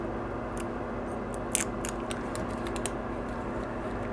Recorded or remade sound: recorded